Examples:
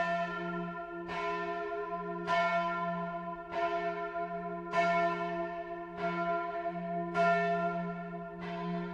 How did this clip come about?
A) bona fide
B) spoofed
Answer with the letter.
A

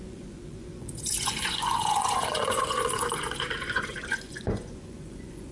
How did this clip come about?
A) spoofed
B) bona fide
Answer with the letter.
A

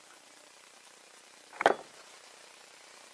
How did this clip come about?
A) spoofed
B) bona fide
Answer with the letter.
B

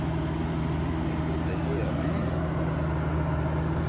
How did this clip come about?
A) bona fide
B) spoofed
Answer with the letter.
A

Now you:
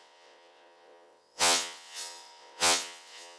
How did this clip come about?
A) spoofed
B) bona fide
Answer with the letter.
A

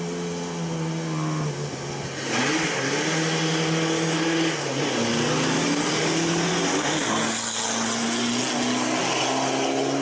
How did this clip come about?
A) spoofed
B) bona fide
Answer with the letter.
B